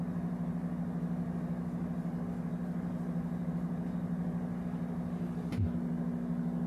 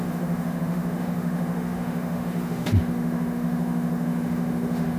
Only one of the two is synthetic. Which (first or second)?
second